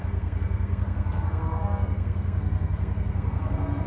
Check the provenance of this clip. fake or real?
fake